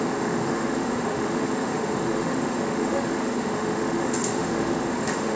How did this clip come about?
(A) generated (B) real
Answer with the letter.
A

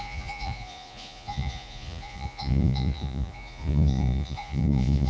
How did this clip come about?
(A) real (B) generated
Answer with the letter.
B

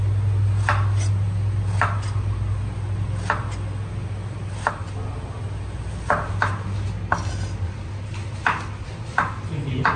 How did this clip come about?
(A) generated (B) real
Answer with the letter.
B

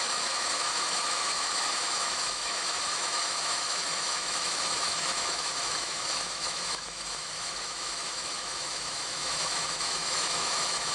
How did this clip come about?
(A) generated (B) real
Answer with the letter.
A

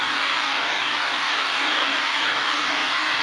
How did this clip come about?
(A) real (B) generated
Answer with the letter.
B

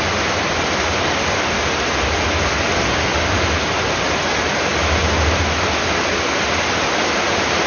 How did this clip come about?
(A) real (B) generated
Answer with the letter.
A